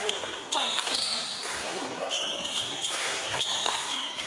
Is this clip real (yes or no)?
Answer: no